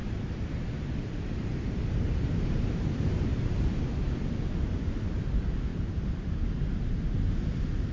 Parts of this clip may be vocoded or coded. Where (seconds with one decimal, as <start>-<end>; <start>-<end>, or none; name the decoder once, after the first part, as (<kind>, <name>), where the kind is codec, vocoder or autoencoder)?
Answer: 0.0-3.8 (vocoder, BigVGAN v2); 5.7-6.3